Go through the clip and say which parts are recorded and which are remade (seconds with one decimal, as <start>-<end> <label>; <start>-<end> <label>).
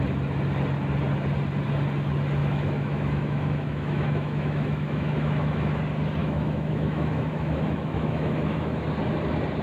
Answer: 0.0-2.4 recorded; 2.4-5.8 remade; 5.8-6.2 recorded; 6.2-8.9 remade; 8.9-9.6 recorded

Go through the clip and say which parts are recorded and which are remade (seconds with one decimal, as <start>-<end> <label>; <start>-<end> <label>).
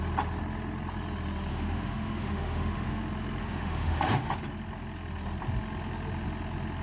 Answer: 0.0-1.5 recorded; 1.5-3.0 remade; 3.0-3.4 recorded; 3.4-4.3 remade; 4.3-6.8 recorded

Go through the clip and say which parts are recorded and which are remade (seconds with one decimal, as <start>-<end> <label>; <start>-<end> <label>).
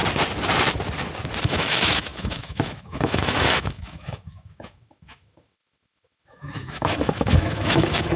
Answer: 0.0-1.4 recorded; 1.4-8.2 remade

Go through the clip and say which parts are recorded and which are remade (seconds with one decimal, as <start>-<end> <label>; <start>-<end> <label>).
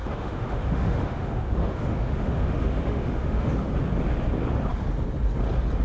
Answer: 0.0-3.5 remade; 3.5-5.8 recorded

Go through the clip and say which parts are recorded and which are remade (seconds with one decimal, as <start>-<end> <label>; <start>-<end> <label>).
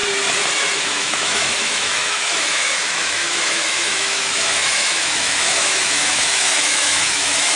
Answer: 0.0-0.8 recorded; 0.8-7.6 remade